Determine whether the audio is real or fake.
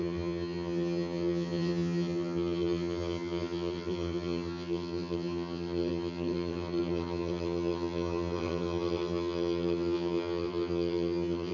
fake